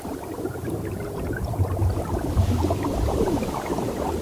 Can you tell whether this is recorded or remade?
recorded